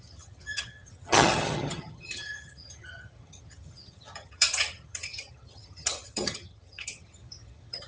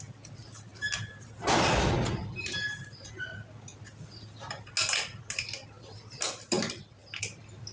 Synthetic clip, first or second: first